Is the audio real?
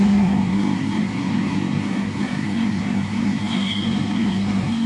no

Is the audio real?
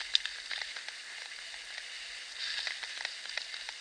yes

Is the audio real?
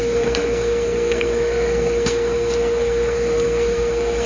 no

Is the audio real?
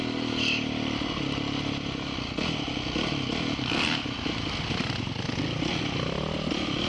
yes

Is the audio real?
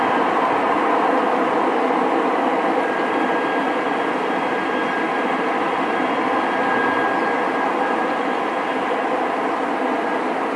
yes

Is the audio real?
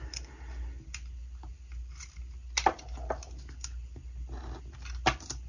yes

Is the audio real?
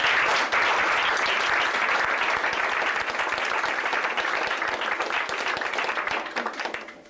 yes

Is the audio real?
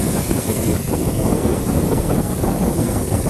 no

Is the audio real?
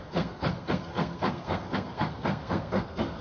no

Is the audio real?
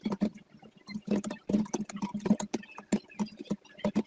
yes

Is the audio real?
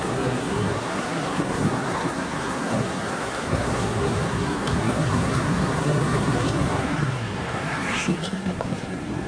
no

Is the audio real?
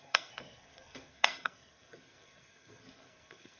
no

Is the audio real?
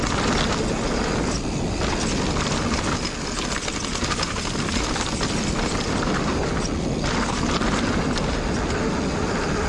yes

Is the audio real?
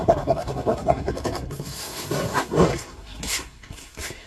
no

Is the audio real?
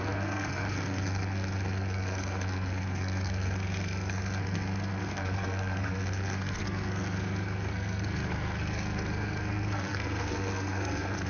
no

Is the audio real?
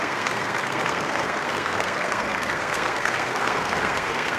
no